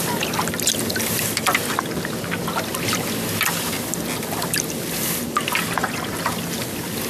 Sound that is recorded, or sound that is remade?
recorded